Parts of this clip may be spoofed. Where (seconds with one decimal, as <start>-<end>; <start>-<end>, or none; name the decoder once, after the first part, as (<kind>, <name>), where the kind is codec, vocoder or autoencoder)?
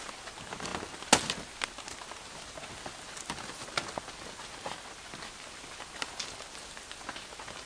none